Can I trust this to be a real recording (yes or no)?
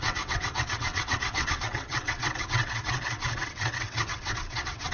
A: no